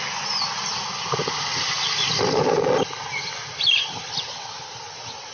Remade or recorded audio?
recorded